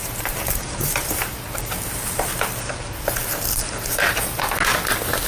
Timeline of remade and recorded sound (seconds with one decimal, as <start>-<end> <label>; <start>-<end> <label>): 0.0-2.3 remade; 2.3-3.9 recorded; 3.9-4.4 remade; 4.4-5.3 recorded